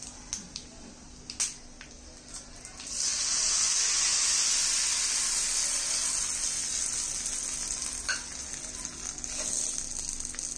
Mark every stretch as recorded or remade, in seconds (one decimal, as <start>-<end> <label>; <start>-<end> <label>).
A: 0.0-10.6 recorded